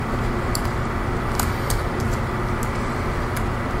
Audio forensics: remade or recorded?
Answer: recorded